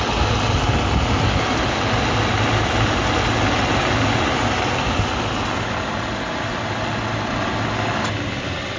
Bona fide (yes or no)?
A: yes